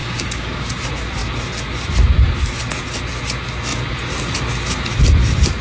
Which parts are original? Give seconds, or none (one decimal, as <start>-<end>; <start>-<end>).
0.7-5.6